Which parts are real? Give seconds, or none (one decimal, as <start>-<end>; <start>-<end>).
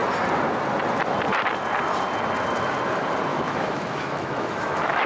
0.0-3.3